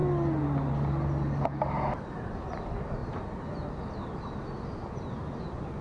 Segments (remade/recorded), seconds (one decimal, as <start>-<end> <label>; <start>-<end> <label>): 0.0-5.8 recorded